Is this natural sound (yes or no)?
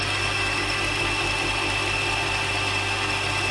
yes